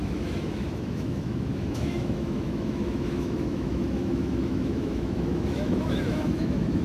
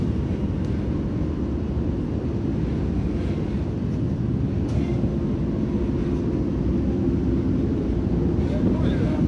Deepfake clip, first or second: first